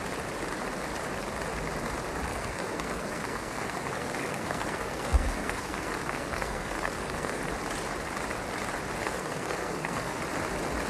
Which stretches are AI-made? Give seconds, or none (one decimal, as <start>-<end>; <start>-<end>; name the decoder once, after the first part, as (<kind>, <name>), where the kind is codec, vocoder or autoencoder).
2.3-7.4 (codec, SNAC); 9.0-10.2